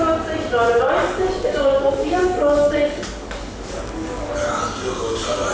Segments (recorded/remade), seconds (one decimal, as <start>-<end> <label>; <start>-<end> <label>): 0.0-1.0 recorded; 1.0-4.3 remade; 4.3-5.5 recorded